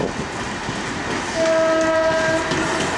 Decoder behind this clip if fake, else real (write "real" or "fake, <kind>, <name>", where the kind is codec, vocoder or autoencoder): real